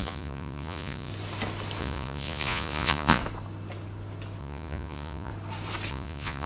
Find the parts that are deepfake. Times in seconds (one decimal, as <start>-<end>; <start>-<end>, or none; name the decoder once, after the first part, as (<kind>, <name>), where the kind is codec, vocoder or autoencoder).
0.0-1.1 (vocoder, Vocos); 1.8-3.2; 4.4-5.3; 5.9-6.5